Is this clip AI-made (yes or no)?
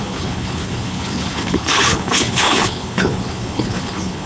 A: yes